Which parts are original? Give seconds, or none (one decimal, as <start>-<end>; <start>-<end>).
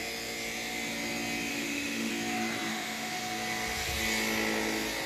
0.0-1.5; 2.1-2.7; 3.2-5.1